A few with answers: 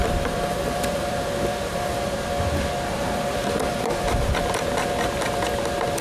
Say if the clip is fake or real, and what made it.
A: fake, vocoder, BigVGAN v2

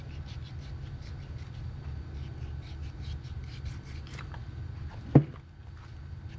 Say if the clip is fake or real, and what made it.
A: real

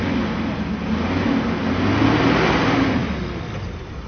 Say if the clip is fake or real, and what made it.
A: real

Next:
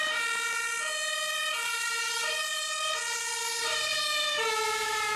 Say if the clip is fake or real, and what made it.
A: fake, vocoder, BigVGAN v2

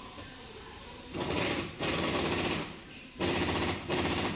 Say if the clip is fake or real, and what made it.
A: fake, vocoder, BigVGAN v2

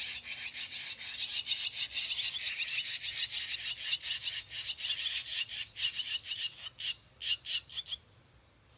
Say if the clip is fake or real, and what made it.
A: fake, vocoder, BigVGAN v2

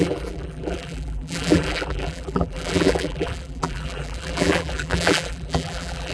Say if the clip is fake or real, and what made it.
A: fake, vocoder, BigVGAN v2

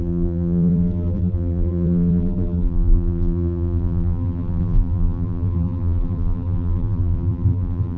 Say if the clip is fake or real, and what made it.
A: fake, vocoder, BigVGAN v2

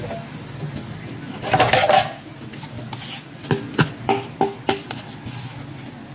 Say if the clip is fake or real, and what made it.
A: real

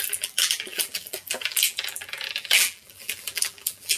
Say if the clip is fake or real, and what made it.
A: fake, vocoder, BigVGAN v2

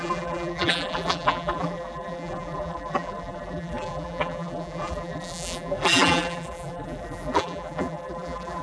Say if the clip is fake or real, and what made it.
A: fake, vocoder, BigVGAN v2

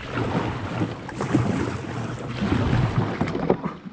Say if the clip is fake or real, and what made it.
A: real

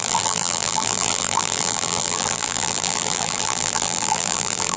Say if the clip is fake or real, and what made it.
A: fake, vocoder, BigVGAN v2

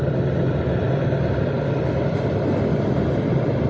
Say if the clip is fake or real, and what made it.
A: fake, vocoder, BigVGAN v2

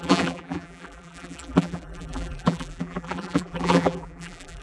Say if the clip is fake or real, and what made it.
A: fake, vocoder, BigVGAN v2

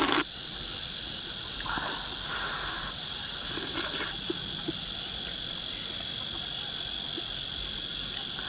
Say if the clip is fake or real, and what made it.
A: real